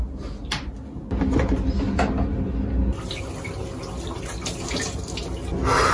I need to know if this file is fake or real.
real